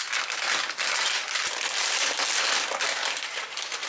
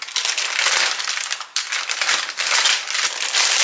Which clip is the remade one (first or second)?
second